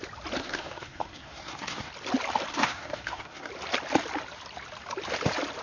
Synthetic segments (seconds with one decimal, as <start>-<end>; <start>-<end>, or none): 0.4-1.9; 2.5-3.5